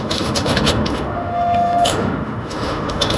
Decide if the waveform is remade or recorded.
remade